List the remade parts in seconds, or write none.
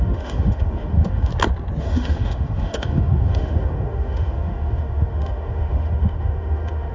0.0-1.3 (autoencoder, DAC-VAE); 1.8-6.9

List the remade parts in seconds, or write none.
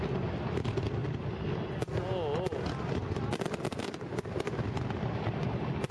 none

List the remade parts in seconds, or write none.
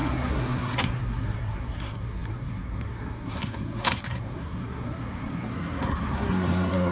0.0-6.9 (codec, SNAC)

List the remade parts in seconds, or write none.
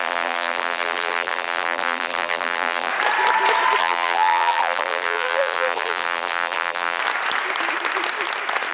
0.0-2.9 (vocoder, BigVGAN v2); 3.8-7.0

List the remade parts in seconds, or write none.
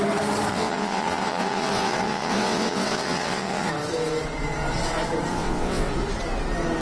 0.5-3.7 (vocoder, WaveNeXt); 5.3-5.9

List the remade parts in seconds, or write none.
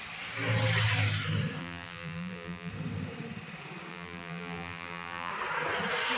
1.6-2.7 (vocoder, BigVGAN v2); 3.9-5.3